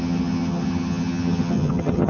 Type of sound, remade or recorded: remade